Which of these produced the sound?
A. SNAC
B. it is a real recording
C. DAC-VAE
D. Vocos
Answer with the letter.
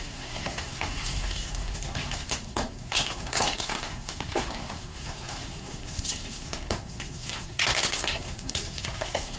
A